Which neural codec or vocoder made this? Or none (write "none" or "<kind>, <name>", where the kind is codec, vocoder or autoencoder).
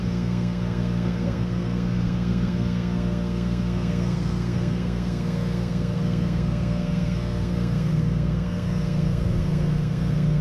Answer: codec, SNAC